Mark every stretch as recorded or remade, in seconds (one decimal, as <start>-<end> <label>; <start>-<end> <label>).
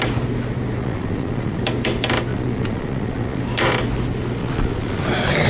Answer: 0.0-0.8 recorded; 0.8-1.6 remade; 1.6-2.3 recorded; 2.3-3.4 remade; 3.4-4.4 recorded; 4.4-5.0 remade; 5.0-5.5 recorded